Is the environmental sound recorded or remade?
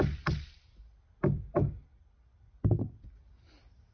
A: recorded